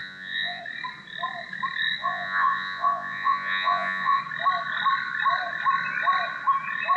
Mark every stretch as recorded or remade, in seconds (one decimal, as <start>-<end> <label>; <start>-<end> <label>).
0.0-0.6 remade; 0.6-2.0 recorded; 2.0-4.2 remade; 4.2-7.0 recorded